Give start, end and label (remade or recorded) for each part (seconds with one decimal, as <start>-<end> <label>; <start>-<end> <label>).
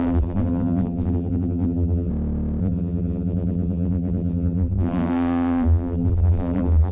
0.0-2.1 remade; 2.1-2.6 recorded; 2.6-6.9 remade